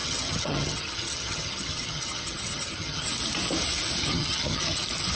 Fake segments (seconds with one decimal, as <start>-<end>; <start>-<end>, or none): 0.0-3.1; 4.0-4.8